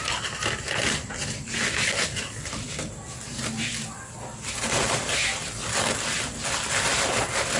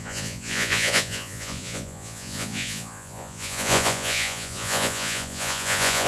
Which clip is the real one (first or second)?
first